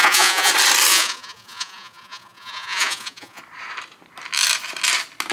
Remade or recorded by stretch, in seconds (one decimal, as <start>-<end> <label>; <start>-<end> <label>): 0.0-0.5 remade; 0.5-0.9 recorded; 0.9-3.4 remade; 3.4-5.3 recorded